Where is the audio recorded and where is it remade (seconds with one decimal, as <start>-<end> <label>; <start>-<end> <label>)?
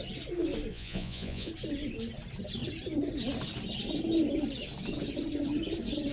0.0-0.7 recorded; 0.7-1.5 remade; 1.5-6.1 recorded